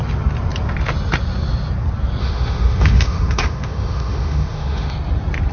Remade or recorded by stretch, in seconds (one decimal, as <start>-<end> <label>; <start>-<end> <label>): 0.0-2.2 recorded; 2.2-4.9 remade; 4.9-5.5 recorded